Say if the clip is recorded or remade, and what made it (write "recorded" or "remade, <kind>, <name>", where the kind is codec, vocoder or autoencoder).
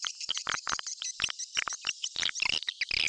recorded